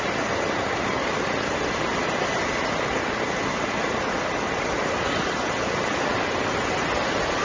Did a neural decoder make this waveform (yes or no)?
no